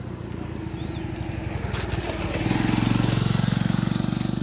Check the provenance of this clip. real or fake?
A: real